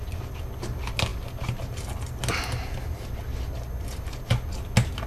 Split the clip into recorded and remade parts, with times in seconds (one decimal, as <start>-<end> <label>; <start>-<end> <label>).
0.0-5.1 recorded